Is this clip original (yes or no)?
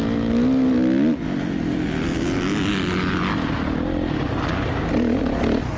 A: yes